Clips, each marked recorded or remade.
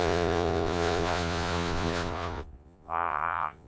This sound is remade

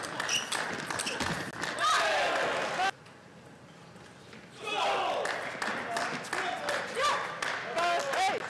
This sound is recorded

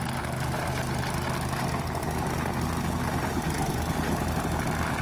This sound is recorded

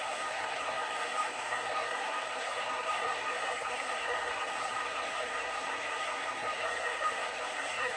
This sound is remade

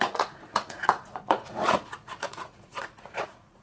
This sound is remade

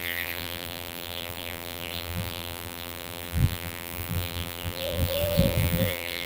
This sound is remade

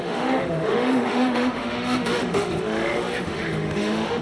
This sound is remade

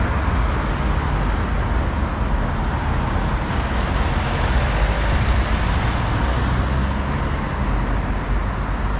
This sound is recorded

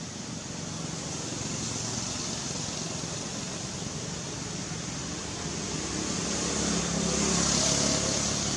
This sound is recorded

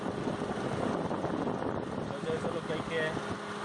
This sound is recorded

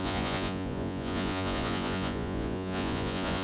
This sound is remade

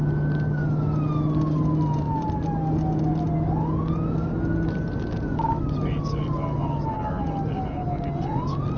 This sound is recorded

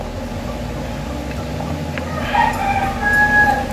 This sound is recorded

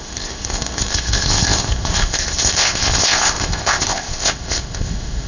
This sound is remade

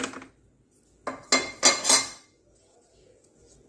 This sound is recorded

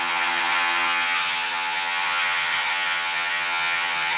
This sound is remade